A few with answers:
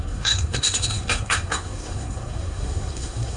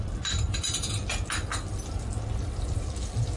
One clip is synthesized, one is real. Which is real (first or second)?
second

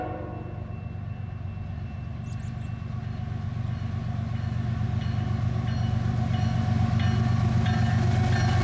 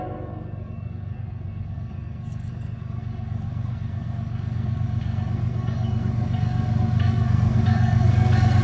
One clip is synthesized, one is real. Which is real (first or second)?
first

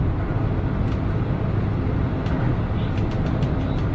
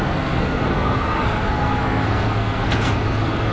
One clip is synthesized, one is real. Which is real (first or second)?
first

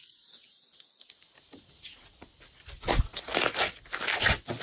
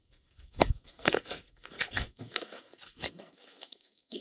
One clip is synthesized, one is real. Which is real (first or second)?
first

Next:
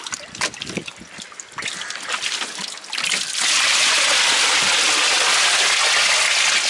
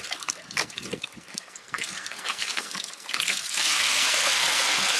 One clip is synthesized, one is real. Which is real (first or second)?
first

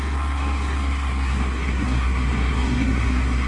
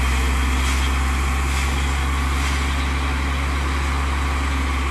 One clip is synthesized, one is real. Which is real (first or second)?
second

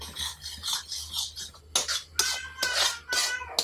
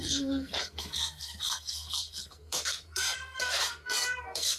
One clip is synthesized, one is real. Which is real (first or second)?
first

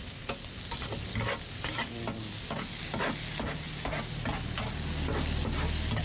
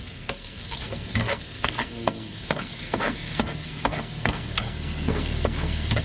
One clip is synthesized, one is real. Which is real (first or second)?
first